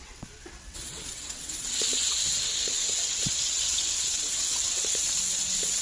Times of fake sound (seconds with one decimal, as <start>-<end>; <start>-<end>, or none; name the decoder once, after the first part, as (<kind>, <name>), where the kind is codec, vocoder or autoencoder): 0.0-5.8 (vocoder, WaveNeXt)